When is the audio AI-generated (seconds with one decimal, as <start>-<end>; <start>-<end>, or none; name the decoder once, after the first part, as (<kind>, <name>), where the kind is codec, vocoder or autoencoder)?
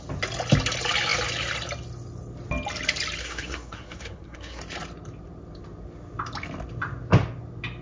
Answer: 3.2-4.6 (codec, SNAC)